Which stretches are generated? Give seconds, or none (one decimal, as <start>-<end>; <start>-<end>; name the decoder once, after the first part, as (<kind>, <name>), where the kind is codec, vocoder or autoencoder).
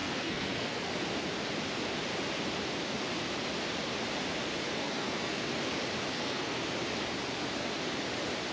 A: 0.0-0.9 (codec, SNAC); 4.8-5.4; 6.1-6.6